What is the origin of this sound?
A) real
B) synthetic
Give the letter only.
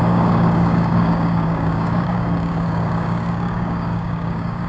B